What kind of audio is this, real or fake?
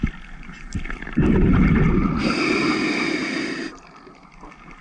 real